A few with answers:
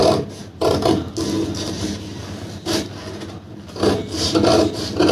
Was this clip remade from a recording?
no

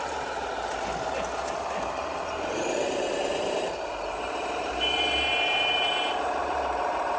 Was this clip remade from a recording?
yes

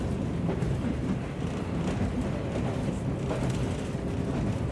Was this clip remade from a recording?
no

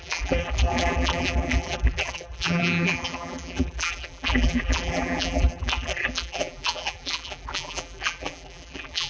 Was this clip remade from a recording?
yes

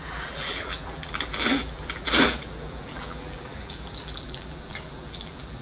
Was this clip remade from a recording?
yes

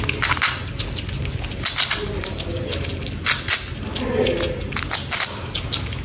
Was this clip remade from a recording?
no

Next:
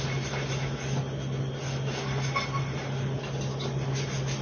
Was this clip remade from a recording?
no